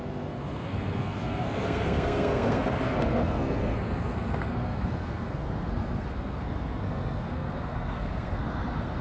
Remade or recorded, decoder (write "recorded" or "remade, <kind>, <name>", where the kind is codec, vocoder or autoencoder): remade, codec, SNAC